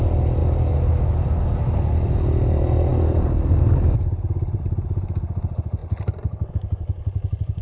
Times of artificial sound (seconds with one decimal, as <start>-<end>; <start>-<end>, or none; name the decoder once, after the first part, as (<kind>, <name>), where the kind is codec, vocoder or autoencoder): none